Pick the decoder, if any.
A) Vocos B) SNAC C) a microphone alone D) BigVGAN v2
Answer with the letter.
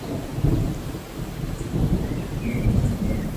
D